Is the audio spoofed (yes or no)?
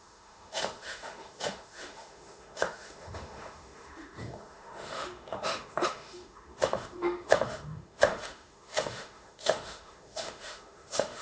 yes